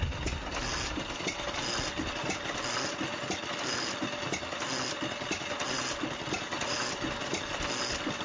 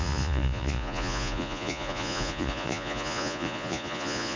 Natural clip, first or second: first